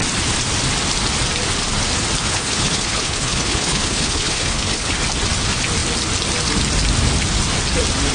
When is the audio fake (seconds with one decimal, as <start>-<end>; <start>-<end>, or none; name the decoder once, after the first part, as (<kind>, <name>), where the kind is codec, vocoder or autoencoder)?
2.2-5.0 (codec, HILCodec)